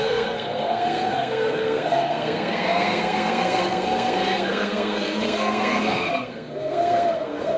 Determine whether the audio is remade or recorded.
remade